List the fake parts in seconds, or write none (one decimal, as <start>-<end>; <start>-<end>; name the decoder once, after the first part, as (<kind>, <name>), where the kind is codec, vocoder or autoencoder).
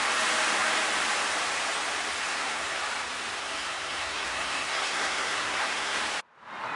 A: 2.2-2.8 (codec, SNAC); 3.4-6.0